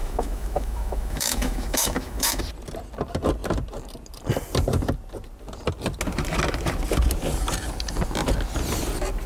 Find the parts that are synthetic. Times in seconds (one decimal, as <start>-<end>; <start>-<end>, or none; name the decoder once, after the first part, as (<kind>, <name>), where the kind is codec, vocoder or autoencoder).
0.0-2.4 (autoencoder, DAC-VAE)